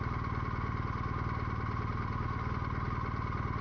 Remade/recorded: recorded